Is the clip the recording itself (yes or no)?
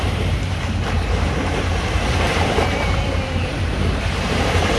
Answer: no